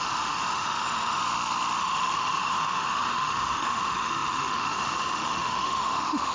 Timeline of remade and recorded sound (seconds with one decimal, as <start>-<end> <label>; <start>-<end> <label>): 0.0-1.2 remade; 1.2-1.8 recorded; 1.8-6.3 remade